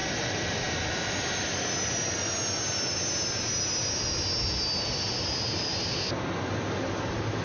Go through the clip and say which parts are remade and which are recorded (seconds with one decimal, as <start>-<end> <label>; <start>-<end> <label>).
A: 0.0-7.4 recorded